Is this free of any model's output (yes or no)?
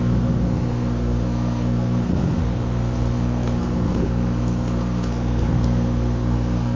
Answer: no